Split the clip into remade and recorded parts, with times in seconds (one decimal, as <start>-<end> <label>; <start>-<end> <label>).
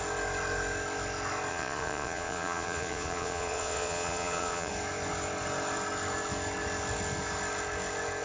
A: 0.0-1.5 recorded; 1.5-4.7 remade; 4.7-8.2 recorded